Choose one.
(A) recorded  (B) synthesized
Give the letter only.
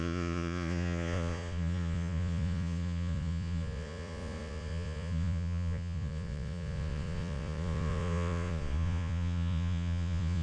B